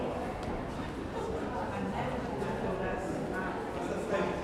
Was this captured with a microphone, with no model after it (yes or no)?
yes